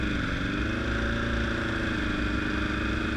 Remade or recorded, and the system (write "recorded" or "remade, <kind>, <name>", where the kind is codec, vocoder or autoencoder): recorded